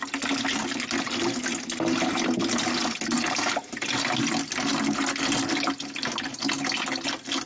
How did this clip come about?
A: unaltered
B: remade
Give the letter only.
A